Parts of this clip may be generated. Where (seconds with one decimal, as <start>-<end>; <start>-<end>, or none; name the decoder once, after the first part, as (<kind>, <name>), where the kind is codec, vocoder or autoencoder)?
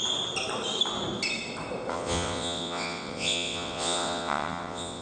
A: 1.9-5.0 (vocoder, WaveNeXt)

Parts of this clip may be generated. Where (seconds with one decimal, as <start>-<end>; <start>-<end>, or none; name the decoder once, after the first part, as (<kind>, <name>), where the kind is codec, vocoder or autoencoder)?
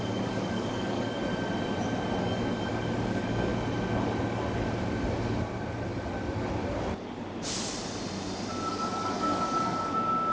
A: 0.0-1.2 (codec, DAC); 2.2-3.5; 8.7-10.3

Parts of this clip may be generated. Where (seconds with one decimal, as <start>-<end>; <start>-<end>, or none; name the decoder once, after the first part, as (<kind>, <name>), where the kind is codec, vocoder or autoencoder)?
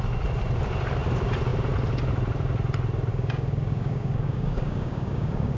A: 3.1-5.6 (codec, DAC)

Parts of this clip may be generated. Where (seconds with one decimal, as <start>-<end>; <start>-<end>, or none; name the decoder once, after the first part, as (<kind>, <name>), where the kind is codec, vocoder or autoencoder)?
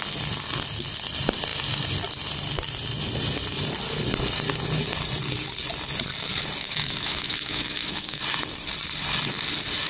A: 6.6-8.2 (autoencoder, DAC-VAE)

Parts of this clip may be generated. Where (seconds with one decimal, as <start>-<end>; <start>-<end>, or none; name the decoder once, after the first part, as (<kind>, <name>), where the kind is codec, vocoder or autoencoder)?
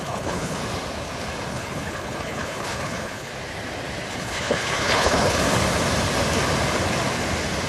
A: 0.0-0.6 (codec, HILCodec); 1.5-3.3; 4.1-5.4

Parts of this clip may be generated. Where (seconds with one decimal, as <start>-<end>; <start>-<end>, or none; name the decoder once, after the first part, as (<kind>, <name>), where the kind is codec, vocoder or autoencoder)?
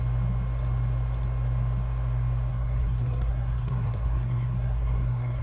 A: 2.5-5.4 (codec, SNAC)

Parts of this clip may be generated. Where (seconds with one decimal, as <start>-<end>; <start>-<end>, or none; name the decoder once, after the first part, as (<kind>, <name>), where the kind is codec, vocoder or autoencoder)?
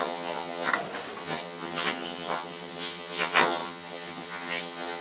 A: 0.0-0.7 (vocoder, HiFi-GAN); 1.2-5.0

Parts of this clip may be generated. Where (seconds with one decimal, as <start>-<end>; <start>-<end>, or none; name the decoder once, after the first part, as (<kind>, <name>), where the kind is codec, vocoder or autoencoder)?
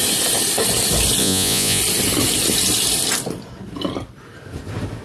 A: 1.2-1.8 (vocoder, Vocos)